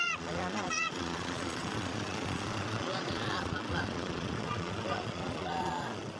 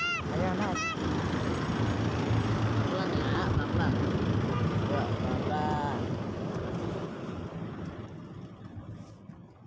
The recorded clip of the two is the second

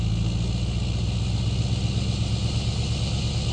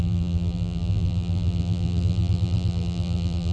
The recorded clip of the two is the first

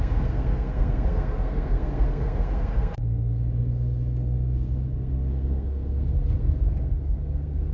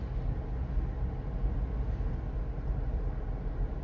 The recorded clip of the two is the second